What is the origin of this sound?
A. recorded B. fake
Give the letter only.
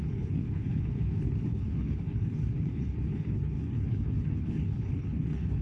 B